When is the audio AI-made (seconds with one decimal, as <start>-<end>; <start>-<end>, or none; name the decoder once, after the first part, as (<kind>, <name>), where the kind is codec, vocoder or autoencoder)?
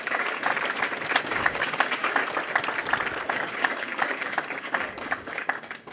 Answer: 0.0-0.5 (codec, DAC); 1.2-2.2; 3.3-5.9